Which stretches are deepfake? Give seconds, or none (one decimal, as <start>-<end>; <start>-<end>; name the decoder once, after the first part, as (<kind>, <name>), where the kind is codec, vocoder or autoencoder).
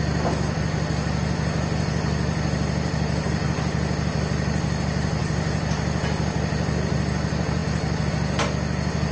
none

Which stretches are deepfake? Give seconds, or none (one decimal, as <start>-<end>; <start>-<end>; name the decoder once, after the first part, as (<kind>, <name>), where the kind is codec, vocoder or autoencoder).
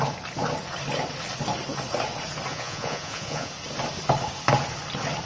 2.5-3.5 (vocoder, Vocos)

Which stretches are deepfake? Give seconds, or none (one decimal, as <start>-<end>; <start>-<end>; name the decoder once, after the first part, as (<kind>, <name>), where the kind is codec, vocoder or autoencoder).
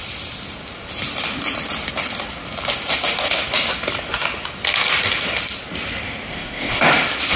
6.3-6.8 (codec, ZipCodec)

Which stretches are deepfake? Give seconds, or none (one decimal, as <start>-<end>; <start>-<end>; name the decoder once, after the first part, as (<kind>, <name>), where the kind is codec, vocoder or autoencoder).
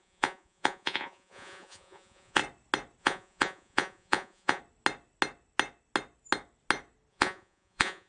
0.0-2.4 (vocoder, Vocos); 3.0-4.6; 7.1-8.1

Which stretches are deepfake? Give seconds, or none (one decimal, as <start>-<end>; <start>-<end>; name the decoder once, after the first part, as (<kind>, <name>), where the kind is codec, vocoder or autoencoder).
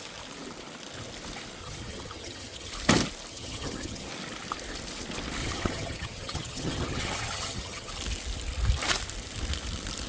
1.6-2.7 (vocoder, HiFi-GAN); 3.3-4.1; 5.4-7.9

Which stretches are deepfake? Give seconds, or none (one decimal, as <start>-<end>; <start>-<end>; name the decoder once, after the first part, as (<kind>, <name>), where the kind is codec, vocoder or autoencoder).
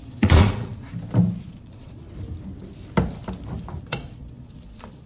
0.0-0.9 (vocoder, Vocos); 1.4-2.0; 3.8-5.1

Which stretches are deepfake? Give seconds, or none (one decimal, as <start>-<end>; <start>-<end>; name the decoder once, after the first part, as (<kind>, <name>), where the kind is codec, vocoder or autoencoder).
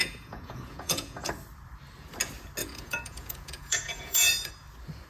0.0-1.3 (vocoder, Vocos); 2.6-4.5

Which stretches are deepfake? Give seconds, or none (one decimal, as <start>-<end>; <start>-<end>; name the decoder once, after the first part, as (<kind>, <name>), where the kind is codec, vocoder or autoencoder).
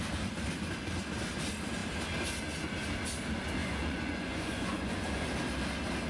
3.6-5.3 (vocoder, Vocos)